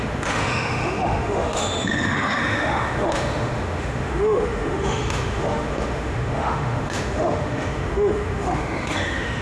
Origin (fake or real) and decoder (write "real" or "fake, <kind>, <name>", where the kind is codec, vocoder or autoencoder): fake, autoencoder, DAC-VAE